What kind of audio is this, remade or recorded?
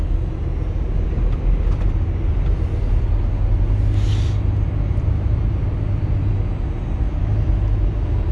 recorded